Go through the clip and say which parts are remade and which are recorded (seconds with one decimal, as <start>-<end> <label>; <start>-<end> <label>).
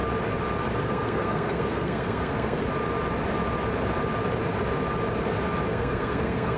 0.0-0.8 recorded; 0.8-2.6 remade; 2.6-5.7 recorded; 5.7-6.6 remade